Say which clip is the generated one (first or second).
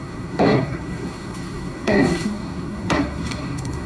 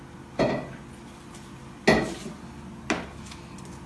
first